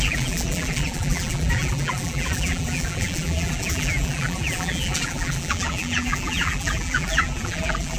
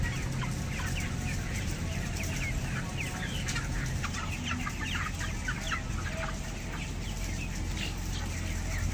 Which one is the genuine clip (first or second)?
second